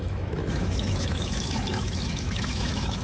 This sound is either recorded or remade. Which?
remade